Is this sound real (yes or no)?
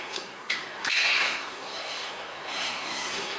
no